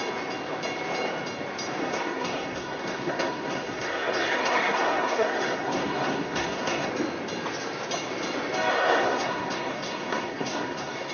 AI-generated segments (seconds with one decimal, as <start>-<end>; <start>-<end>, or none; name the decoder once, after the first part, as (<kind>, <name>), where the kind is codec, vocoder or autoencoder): 1.8-6.9 (codec, SNAC); 8.7-11.1